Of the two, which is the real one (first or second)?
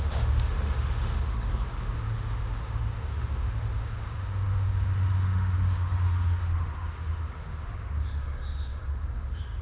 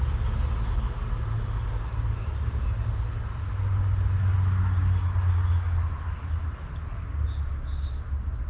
second